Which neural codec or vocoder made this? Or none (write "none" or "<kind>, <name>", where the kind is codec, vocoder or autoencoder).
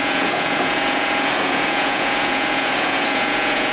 vocoder, Vocos